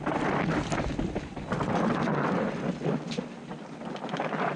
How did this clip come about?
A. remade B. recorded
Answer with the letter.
B